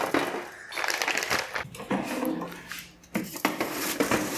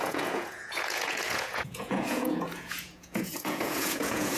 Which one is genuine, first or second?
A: first